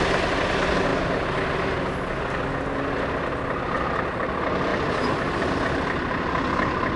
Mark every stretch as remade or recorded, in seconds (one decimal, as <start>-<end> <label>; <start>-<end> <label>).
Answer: 0.0-7.0 recorded